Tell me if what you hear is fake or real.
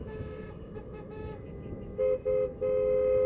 fake